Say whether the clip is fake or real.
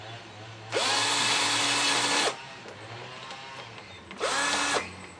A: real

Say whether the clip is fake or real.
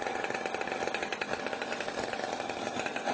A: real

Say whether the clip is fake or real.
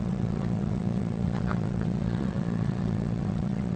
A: fake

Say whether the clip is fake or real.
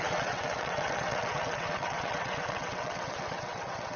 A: fake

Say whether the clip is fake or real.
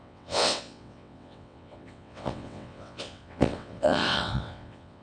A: fake